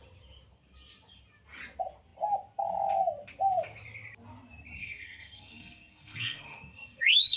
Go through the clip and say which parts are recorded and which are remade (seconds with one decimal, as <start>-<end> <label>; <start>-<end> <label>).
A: 0.0-4.8 recorded; 4.8-7.4 remade